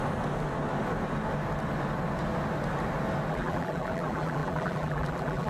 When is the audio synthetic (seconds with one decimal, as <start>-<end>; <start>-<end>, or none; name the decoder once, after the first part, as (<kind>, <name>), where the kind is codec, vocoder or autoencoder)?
3.3-5.5 (vocoder, BigVGAN v2)